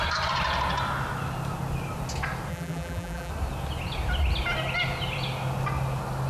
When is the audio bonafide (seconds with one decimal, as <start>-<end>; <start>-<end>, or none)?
0.0-2.5; 3.3-6.3